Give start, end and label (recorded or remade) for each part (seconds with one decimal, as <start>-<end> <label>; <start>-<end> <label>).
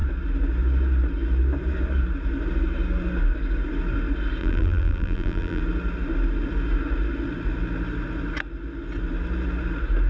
0.0-4.4 recorded; 4.4-5.6 remade; 5.6-10.1 recorded